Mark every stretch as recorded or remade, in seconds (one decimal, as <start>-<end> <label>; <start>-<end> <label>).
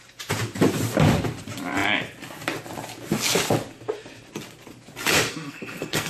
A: 0.0-5.3 recorded; 5.3-6.1 remade